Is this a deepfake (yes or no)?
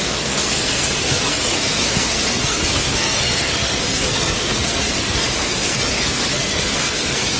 yes